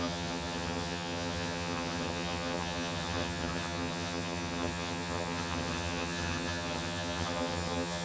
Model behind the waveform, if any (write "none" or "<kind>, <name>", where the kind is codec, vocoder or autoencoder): vocoder, HiFi-GAN